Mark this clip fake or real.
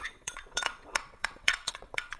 fake